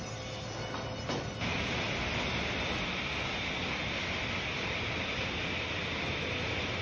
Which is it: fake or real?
real